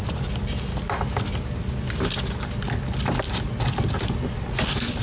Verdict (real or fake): real